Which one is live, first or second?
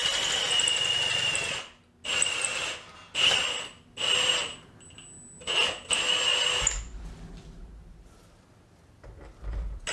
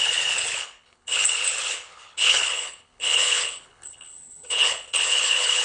first